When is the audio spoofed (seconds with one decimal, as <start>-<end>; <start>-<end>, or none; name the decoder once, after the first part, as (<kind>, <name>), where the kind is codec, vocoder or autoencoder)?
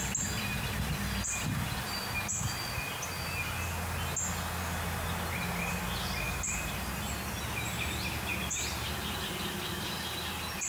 none